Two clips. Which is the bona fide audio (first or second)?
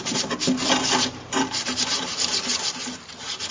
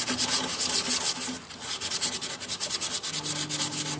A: second